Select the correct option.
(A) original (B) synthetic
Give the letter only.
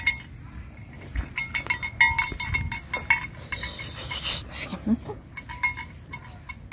A